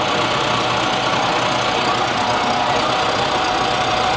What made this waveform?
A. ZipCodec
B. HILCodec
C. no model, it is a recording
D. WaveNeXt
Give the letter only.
C